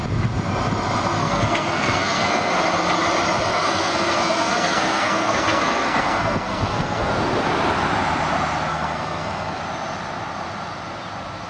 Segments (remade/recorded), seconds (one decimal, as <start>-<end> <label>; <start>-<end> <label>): 0.0-1.2 recorded; 1.2-2.5 remade; 2.5-3.5 recorded; 3.5-7.1 remade; 7.1-8.7 recorded; 8.7-9.6 remade; 9.6-11.5 recorded